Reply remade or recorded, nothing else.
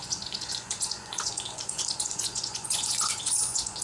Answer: remade